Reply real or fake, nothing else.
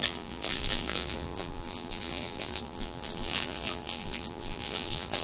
fake